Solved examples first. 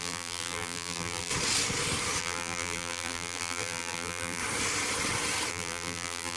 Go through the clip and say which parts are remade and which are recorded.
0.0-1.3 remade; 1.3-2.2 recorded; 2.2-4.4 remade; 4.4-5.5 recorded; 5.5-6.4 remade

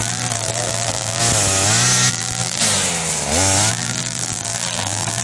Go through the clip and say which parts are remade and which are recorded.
0.0-1.2 remade; 1.2-2.1 recorded; 2.1-2.6 remade; 2.6-3.7 recorded; 3.7-5.2 remade

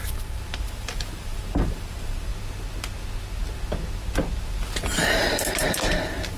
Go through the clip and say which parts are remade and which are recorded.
0.0-2.3 remade; 2.3-5.0 recorded; 5.0-6.4 remade

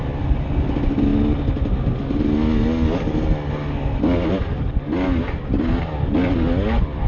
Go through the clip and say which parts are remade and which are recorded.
0.0-7.1 recorded

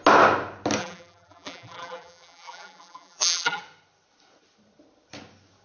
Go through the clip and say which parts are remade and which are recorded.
0.0-0.8 recorded; 0.8-3.6 remade; 3.6-5.6 recorded

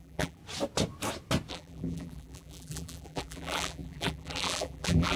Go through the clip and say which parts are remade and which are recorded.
0.0-0.4 remade; 0.4-1.5 recorded; 1.5-5.2 remade

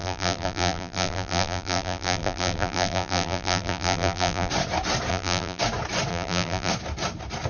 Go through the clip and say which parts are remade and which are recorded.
0.0-4.5 remade; 4.5-5.1 recorded; 5.1-5.6 remade; 5.6-6.1 recorded; 6.1-6.7 remade; 6.7-7.5 recorded

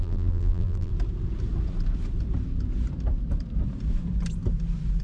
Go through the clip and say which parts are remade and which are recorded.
0.0-0.9 remade; 0.9-5.0 recorded